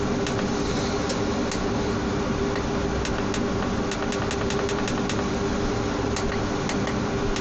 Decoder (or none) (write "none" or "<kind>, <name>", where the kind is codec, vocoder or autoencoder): none